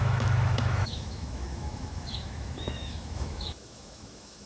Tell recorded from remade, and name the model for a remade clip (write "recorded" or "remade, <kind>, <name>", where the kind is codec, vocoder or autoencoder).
remade, autoencoder, DAC-VAE